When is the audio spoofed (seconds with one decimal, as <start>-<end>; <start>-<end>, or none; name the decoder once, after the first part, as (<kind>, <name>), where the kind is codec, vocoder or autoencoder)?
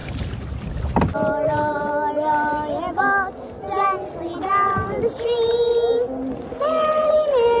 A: none